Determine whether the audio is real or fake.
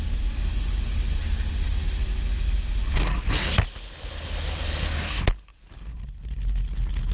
real